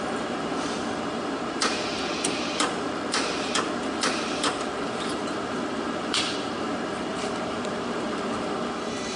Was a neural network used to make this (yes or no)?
yes